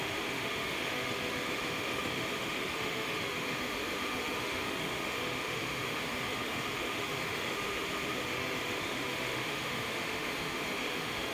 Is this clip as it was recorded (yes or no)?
no